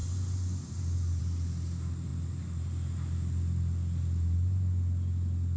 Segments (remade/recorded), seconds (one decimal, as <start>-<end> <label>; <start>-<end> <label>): 0.0-5.6 recorded